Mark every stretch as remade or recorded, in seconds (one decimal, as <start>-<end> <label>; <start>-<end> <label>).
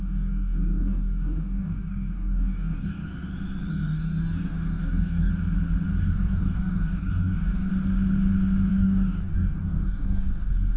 0.0-3.0 remade; 3.0-3.7 recorded; 3.7-5.3 remade; 5.3-6.0 recorded; 6.0-7.7 remade; 7.7-8.7 recorded; 8.7-10.8 remade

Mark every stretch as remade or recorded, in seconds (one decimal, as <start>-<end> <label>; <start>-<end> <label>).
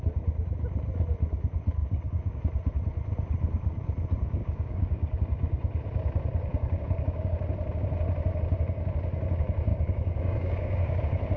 0.0-1.8 recorded; 1.8-2.4 remade; 2.4-4.4 recorded; 4.4-5.2 remade; 5.2-6.5 recorded; 6.5-7.4 remade; 7.4-9.7 recorded; 9.7-11.0 remade; 11.0-11.4 recorded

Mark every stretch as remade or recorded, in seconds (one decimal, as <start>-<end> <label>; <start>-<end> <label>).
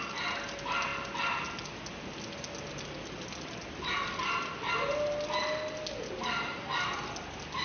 0.0-7.6 recorded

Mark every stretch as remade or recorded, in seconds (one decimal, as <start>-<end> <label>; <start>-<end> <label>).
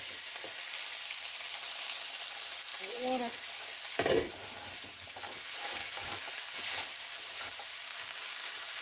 0.0-5.8 recorded; 5.8-6.3 remade; 6.3-7.7 recorded; 7.7-8.8 remade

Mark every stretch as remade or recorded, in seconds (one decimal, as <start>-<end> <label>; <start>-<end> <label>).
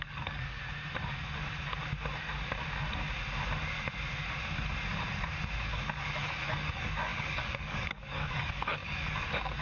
0.0-0.6 remade; 0.6-5.6 recorded; 5.6-9.6 remade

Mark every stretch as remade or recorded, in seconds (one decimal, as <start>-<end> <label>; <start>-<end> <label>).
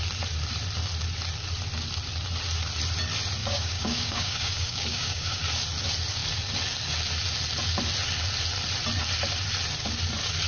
0.0-3.4 recorded; 3.4-5.4 remade; 5.4-10.5 recorded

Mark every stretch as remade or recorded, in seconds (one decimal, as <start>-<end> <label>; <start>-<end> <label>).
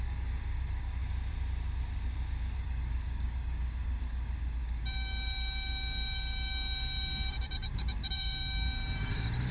0.0-1.0 remade; 1.0-2.6 recorded; 2.6-9.5 remade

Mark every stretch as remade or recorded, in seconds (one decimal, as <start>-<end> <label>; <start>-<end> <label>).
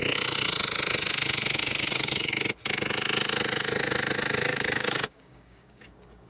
0.0-1.6 recorded; 1.6-2.3 remade; 2.3-4.5 recorded; 4.5-6.3 remade